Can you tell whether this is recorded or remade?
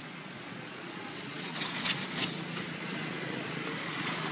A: remade